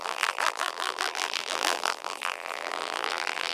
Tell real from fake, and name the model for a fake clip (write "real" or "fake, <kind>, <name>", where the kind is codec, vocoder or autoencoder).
fake, vocoder, BigVGAN v2